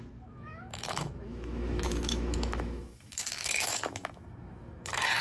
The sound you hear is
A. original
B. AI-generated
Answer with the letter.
B